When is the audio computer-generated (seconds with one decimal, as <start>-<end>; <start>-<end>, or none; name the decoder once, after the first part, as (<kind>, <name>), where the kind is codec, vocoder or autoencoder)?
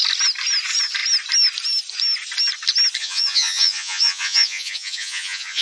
3.0-5.6 (vocoder, Vocos)